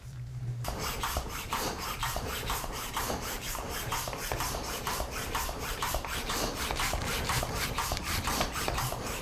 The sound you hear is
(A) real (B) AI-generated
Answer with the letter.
B